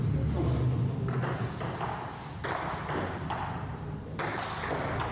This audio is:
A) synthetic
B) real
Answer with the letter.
B